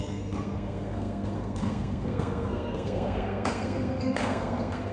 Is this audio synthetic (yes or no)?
yes